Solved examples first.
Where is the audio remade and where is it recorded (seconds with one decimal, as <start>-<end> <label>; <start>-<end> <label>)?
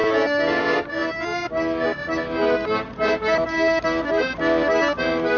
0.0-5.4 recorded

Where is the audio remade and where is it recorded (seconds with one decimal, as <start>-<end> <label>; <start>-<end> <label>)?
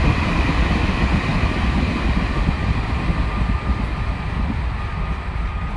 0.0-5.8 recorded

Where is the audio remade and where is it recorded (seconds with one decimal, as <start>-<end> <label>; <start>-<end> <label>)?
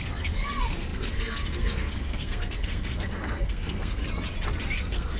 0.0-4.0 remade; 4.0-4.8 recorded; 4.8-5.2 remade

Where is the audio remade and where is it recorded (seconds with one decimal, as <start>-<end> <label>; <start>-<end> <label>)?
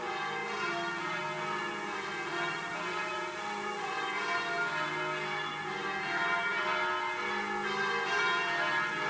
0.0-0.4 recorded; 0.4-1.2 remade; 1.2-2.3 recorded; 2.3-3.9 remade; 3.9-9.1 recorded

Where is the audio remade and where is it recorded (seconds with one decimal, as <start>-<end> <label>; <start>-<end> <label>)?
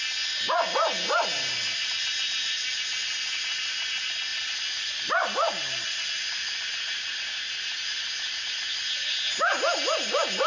0.0-10.5 recorded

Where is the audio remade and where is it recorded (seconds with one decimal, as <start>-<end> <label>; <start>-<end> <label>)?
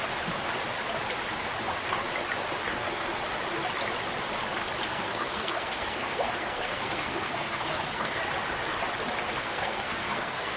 0.0-2.6 recorded; 2.6-3.2 remade; 3.2-4.9 recorded; 4.9-8.2 remade; 8.2-9.4 recorded; 9.4-10.6 remade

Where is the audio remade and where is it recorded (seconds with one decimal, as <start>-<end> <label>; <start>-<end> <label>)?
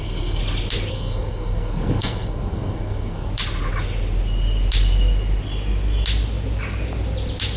0.0-0.4 remade; 0.4-0.9 recorded; 0.9-3.3 remade; 3.3-7.6 recorded